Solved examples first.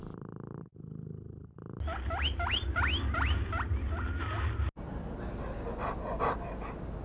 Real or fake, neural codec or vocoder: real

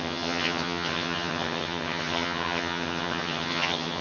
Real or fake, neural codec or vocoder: fake, vocoder, HiFi-GAN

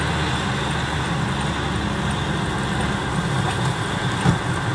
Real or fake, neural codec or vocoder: real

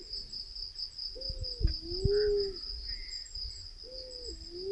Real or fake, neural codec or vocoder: real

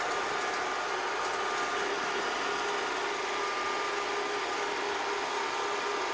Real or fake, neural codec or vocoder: real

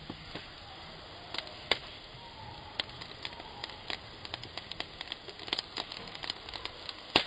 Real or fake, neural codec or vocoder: real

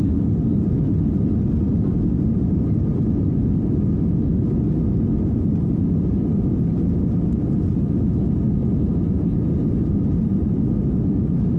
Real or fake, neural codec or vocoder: real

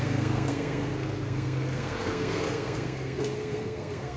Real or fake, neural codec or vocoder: fake, codec, SNAC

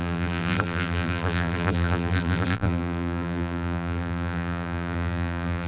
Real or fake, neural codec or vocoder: fake, vocoder, BigVGAN v2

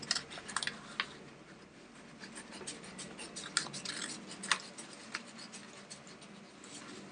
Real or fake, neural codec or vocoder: real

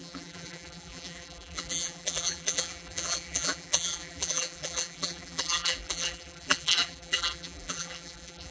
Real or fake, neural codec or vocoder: fake, vocoder, BigVGAN v2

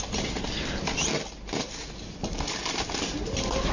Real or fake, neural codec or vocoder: real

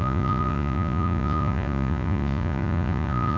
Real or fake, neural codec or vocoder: fake, vocoder, Vocos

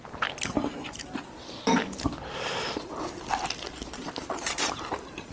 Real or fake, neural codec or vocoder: fake, vocoder, BigVGAN v2